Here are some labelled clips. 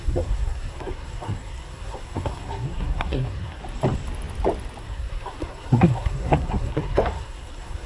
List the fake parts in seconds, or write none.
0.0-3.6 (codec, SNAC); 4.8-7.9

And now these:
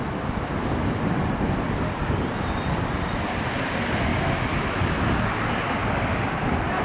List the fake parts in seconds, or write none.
4.1-4.9 (vocoder, BigVGAN v2); 5.8-6.8

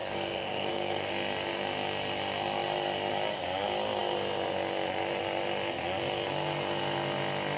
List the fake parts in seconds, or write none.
0.0-1.1 (codec, SNAC)

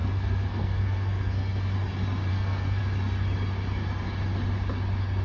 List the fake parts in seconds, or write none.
0.0-1.7 (codec, SNAC); 2.3-2.8

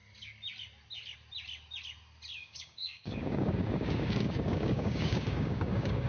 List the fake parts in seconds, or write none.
2.4-6.1 (codec, DAC)

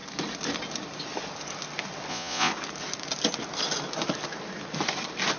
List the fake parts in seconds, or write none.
2.1-2.5 (vocoder, Vocos)

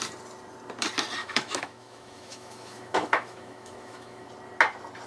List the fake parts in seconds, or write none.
1.2-4.3 (autoencoder, DAC-VAE)